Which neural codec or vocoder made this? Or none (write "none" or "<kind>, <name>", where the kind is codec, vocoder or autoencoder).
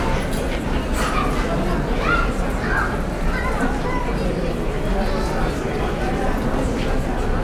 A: none